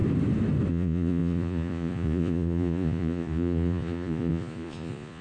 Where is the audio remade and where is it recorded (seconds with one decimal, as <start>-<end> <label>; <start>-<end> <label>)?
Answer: 0.0-0.7 recorded; 0.7-5.2 remade

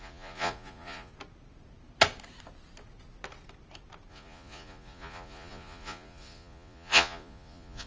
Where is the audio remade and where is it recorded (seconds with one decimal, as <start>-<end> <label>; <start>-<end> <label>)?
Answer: 0.0-1.1 remade; 1.1-4.1 recorded; 4.1-7.9 remade

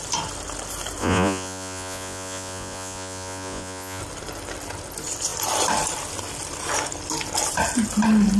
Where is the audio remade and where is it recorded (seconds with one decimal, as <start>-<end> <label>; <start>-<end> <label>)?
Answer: 0.0-1.0 recorded; 1.0-4.0 remade; 4.0-8.4 recorded

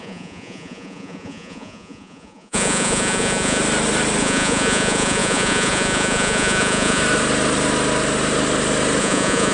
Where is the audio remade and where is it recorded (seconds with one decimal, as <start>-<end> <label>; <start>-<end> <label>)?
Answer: 0.0-3.6 remade; 3.6-4.2 recorded; 4.2-7.0 remade; 7.0-9.0 recorded; 9.0-9.5 remade

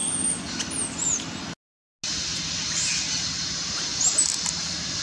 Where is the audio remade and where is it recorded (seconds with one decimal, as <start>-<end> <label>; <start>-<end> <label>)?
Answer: 0.0-0.5 remade; 0.5-5.0 recorded